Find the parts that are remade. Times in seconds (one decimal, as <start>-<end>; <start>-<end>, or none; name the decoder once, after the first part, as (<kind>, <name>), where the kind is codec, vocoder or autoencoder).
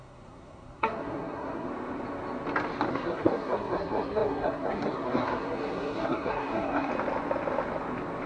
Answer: 0.0-1.7 (codec, SNAC); 2.9-6.9